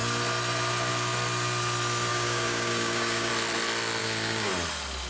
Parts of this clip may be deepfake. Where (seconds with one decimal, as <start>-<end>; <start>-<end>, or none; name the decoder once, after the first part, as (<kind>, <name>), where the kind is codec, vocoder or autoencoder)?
2.1-3.3 (codec, DAC); 4.0-4.5